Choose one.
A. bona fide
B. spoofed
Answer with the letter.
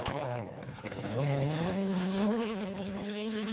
B